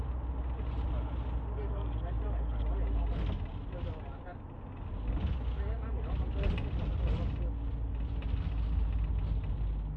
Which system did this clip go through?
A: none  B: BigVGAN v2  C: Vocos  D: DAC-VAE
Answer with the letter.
A